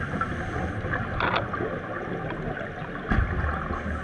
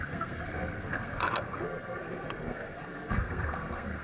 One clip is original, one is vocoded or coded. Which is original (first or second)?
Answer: first